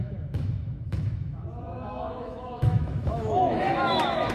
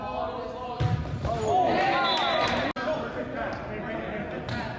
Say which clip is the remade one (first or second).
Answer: first